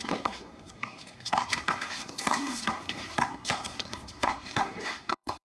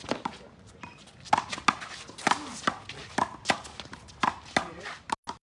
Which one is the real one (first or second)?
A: second